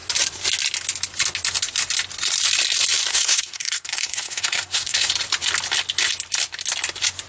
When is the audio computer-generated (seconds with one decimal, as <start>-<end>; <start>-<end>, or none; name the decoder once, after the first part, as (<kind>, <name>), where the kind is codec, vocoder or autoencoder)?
3.1-5.1 (codec, SNAC)